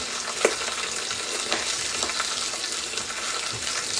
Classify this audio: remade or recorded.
recorded